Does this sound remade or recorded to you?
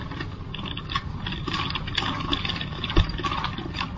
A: recorded